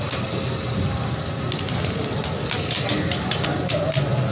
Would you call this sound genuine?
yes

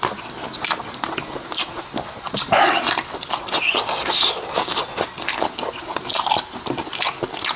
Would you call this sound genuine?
yes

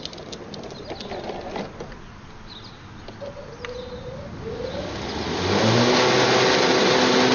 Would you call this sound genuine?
yes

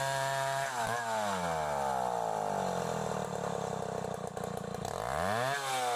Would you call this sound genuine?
yes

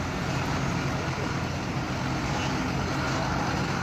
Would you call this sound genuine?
yes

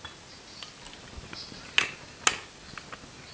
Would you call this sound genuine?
yes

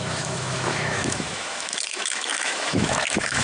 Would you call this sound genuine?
no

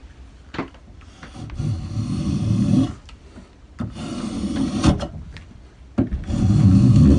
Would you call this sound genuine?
yes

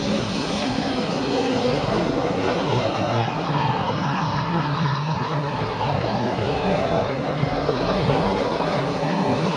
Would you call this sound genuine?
no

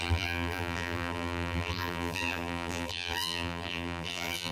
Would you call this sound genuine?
no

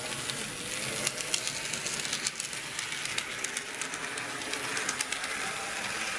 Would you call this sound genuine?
yes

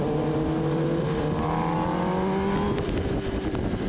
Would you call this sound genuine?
yes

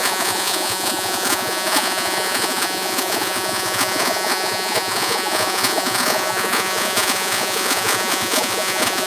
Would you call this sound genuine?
no